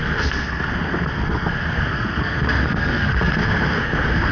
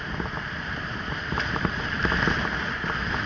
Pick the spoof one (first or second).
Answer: first